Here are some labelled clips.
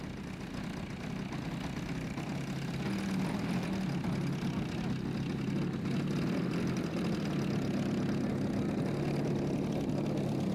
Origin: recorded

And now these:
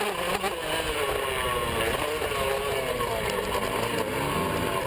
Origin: recorded